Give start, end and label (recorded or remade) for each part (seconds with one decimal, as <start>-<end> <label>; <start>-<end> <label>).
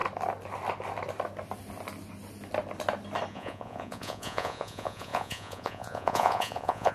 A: 0.0-3.3 recorded; 3.3-6.9 remade